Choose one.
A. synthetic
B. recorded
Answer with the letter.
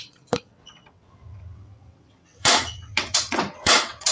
A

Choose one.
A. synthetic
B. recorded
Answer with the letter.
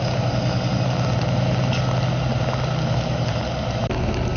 B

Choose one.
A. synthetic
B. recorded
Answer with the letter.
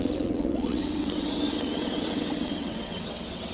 A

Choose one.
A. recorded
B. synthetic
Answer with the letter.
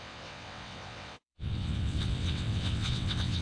B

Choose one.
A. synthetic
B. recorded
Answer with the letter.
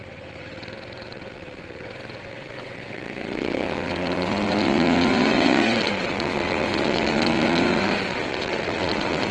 A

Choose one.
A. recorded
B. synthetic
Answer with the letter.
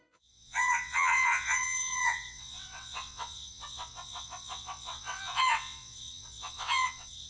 B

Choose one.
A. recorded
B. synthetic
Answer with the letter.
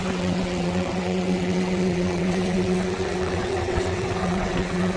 B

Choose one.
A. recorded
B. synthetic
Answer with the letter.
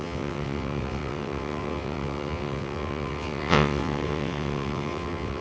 B